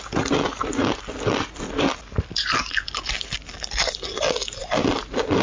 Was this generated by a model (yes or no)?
no